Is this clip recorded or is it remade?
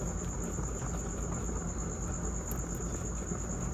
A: recorded